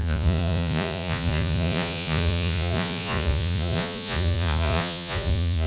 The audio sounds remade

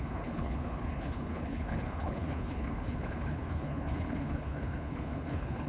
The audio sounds remade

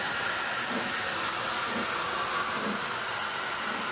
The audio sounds recorded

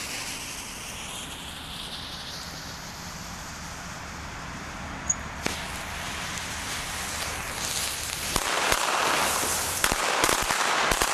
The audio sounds recorded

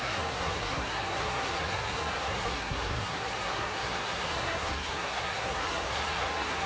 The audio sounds remade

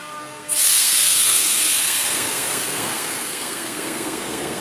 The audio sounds remade